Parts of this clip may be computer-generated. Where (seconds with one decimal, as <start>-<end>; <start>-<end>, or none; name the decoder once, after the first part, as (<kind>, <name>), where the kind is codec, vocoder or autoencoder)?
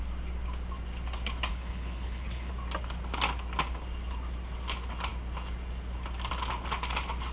1.5-2.5 (codec, HILCodec)